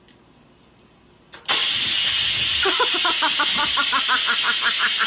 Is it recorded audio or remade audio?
recorded